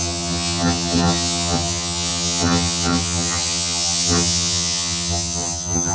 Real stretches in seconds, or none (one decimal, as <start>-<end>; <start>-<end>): none